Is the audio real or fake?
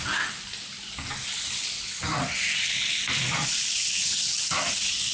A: real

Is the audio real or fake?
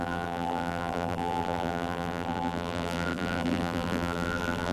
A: fake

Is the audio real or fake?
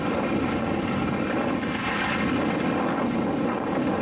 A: real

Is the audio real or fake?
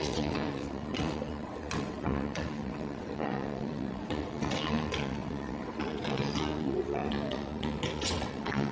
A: fake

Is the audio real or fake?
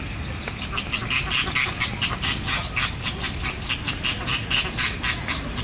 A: real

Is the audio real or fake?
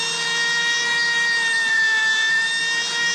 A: fake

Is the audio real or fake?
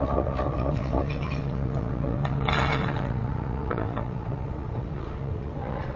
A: fake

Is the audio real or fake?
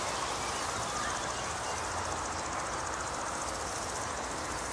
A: real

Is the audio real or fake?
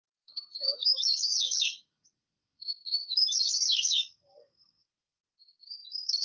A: fake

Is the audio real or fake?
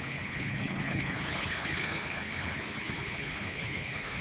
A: fake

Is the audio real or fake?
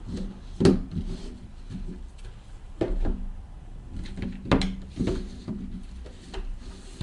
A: real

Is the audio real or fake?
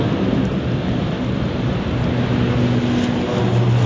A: real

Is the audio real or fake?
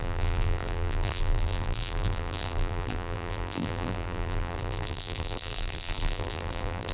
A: fake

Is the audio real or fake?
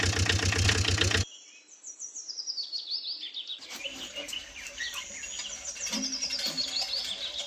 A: real